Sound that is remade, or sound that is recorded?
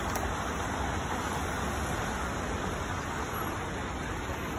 recorded